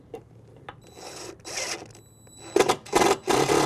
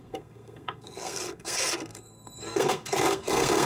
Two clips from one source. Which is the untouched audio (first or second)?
first